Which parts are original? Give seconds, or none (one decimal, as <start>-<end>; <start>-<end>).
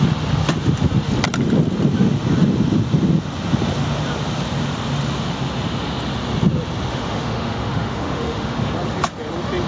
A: 0.0-6.9; 8.7-9.7